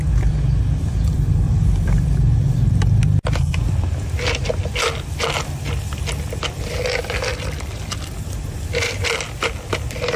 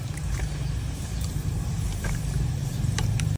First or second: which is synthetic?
second